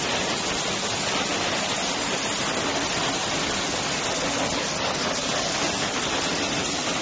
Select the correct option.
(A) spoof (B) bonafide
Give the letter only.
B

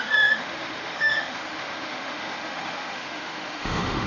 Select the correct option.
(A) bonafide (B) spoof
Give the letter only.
B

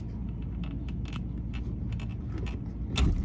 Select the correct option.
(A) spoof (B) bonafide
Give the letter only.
B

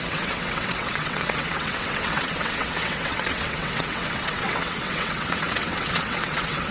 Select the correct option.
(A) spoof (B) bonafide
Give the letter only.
A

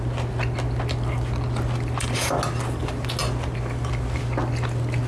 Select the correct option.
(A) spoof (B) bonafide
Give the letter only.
B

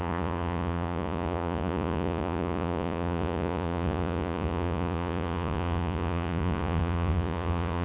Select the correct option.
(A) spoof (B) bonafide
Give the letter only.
A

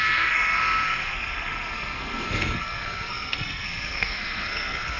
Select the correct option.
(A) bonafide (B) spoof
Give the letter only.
B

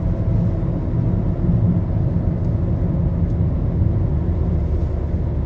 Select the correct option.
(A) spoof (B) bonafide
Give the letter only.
B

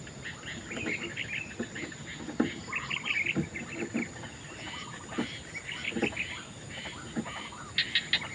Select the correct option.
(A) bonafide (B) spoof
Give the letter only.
A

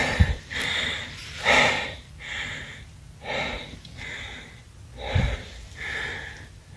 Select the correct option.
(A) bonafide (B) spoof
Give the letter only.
A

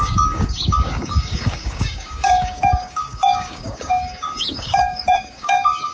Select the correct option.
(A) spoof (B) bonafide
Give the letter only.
A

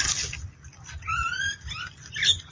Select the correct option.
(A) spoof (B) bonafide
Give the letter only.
B